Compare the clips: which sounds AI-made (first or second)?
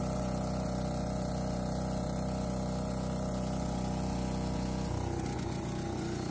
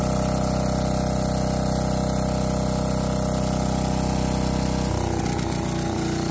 first